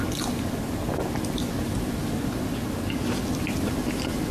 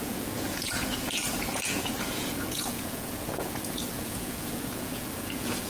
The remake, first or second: second